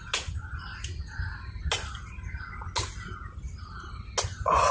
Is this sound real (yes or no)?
yes